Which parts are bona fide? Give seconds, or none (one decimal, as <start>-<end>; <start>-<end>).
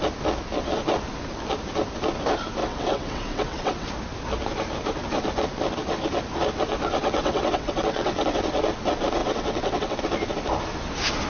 0.0-2.6; 3.9-7.0; 8.4-9.2; 10.0-11.3